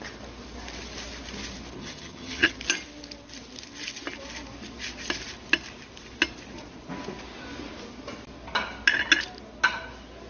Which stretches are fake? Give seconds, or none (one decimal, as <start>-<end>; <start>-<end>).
1.8-2.5